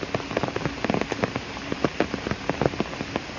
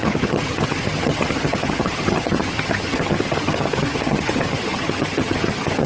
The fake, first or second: second